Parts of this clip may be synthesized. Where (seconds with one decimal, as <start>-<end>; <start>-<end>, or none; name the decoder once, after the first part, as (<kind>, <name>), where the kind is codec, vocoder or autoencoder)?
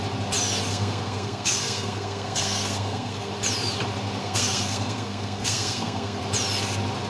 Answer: 0.7-3.3 (codec, SNAC); 4.2-6.2